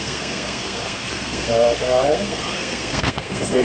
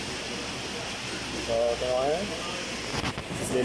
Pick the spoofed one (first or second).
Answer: first